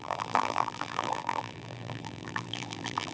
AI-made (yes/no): yes